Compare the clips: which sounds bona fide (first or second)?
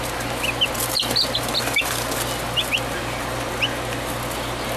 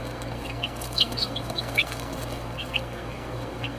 first